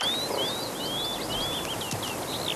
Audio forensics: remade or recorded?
recorded